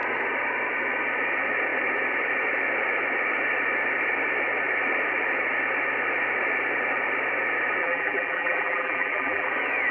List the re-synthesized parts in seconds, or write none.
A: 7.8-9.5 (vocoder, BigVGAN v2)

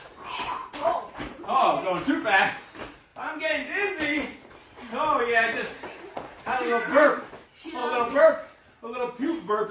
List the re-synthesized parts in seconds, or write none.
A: 0.6-1.4 (vocoder, Vocos)